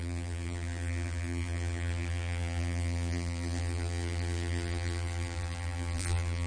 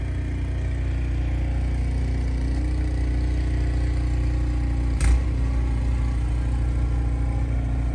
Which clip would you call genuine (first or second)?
second